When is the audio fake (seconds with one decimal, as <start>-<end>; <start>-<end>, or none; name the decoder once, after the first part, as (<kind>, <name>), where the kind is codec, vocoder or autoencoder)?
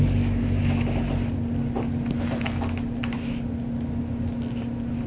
none